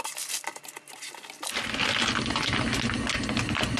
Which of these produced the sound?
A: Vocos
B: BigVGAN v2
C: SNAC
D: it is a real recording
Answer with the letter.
D